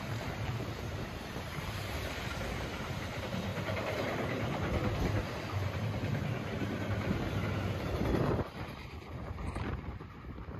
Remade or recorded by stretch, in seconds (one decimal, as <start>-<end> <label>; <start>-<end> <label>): 0.0-3.5 remade; 3.5-7.9 recorded; 7.9-10.6 remade